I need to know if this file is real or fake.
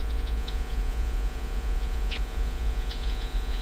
fake